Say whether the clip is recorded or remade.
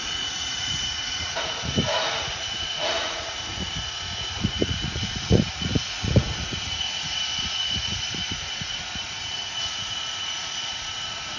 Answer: remade